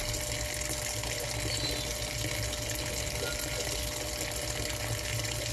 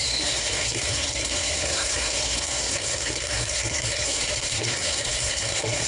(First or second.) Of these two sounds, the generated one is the second